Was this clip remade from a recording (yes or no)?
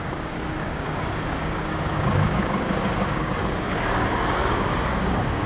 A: yes